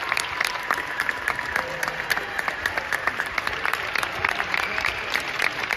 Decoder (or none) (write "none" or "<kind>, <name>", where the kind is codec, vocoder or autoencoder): vocoder, BigVGAN v2